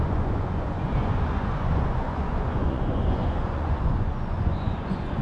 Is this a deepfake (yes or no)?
yes